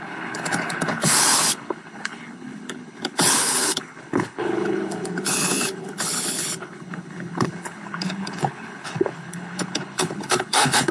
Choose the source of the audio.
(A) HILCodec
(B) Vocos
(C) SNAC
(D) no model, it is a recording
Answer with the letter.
A